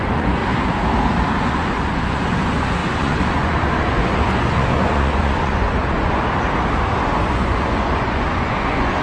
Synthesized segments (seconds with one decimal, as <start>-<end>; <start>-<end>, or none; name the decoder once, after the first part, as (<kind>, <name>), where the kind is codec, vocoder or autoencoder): 0.0-0.4 (vocoder, Vocos); 1.4-6.2; 7.2-9.0